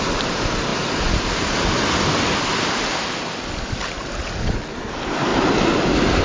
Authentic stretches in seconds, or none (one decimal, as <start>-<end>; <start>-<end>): 0.0-6.2